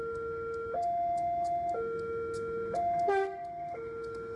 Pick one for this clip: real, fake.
real